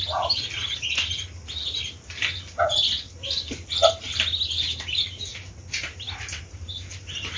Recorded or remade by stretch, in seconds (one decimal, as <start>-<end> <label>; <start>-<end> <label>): 0.0-5.3 recorded; 5.3-7.4 remade